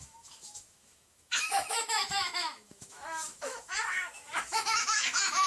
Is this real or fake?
fake